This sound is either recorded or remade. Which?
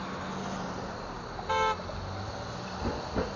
recorded